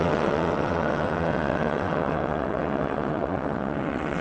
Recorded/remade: remade